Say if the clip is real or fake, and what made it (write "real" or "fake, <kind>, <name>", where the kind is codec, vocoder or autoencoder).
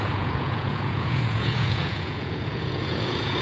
fake, vocoder, Vocos